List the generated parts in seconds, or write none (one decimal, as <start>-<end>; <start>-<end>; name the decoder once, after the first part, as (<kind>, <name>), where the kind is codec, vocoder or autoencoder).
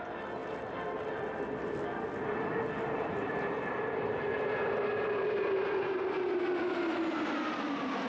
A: none